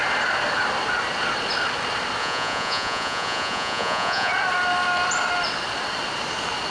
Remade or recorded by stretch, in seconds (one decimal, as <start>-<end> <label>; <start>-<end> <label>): 0.0-2.2 recorded; 2.2-4.3 remade; 4.3-6.7 recorded